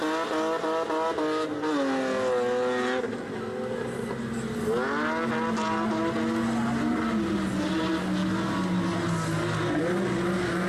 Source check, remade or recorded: recorded